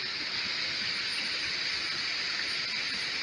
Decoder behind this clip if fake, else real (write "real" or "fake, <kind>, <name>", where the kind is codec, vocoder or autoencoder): real